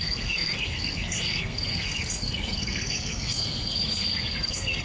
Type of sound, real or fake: fake